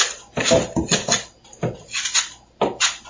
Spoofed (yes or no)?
no